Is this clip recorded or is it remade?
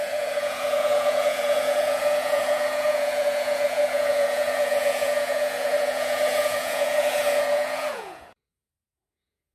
remade